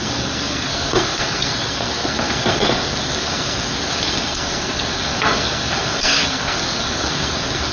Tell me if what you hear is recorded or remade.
remade